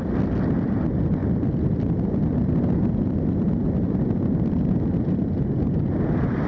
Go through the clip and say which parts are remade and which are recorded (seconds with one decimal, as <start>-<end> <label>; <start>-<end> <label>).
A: 0.0-1.2 recorded; 1.2-4.1 remade; 4.1-6.5 recorded